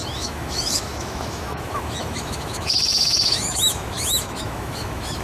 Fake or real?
fake